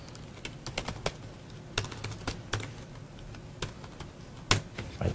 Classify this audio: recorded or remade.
recorded